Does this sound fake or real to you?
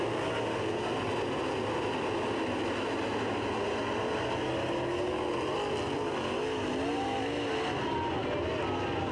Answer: real